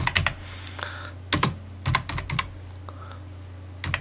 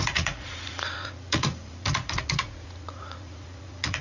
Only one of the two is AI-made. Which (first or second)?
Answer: second